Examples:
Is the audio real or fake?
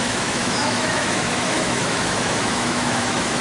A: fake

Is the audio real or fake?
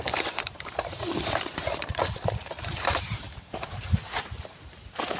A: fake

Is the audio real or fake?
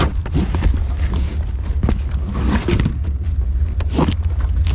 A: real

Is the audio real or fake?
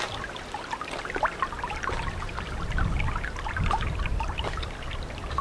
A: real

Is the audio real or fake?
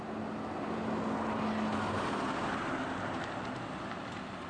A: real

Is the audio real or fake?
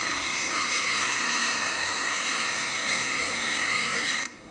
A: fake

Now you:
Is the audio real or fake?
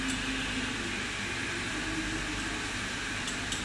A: real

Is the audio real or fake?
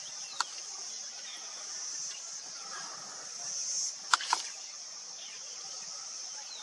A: real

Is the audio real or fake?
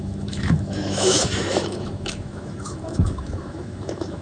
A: fake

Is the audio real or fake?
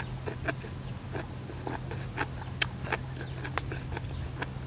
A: real